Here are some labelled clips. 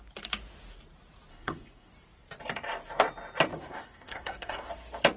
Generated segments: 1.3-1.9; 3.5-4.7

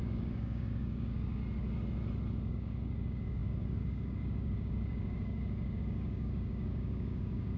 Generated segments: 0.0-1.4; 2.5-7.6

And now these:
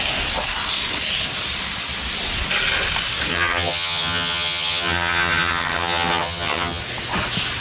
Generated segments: 3.3-6.8

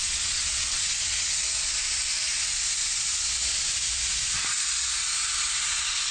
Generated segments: 0.0-1.4